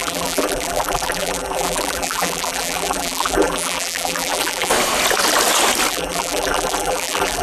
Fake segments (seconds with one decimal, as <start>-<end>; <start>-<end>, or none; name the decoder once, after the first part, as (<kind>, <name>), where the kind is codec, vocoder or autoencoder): 0.0-4.7 (vocoder, BigVGAN v2); 5.9-7.4